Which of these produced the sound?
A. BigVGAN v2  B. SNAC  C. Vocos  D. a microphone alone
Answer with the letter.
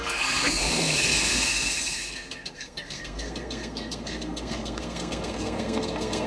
B